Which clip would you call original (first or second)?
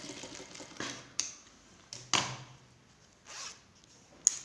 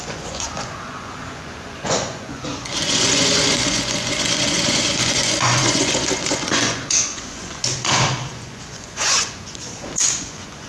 first